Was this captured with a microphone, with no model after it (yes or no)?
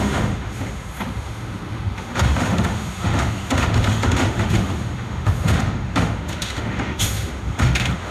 no